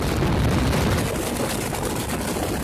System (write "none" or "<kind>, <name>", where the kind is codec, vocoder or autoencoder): none